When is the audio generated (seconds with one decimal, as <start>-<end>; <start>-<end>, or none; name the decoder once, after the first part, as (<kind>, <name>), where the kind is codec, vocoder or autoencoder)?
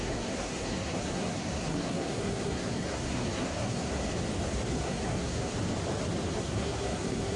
0.0-4.0 (codec, SNAC); 4.7-5.5; 6.4-7.4